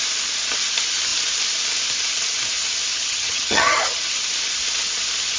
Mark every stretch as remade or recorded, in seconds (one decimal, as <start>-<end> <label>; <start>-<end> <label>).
0.0-2.9 recorded; 2.9-4.0 remade; 4.0-5.4 recorded